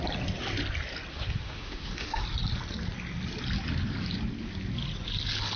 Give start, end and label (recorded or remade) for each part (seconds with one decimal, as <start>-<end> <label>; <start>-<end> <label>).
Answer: 0.0-1.1 recorded; 1.1-2.2 remade; 2.2-5.6 recorded